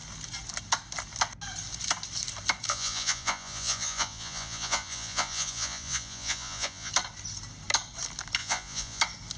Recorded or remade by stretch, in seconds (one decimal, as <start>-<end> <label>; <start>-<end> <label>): 0.0-2.7 recorded; 2.7-6.9 remade; 6.9-8.4 recorded; 8.4-9.0 remade; 9.0-9.4 recorded